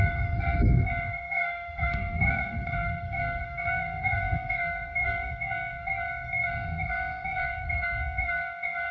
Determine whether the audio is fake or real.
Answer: fake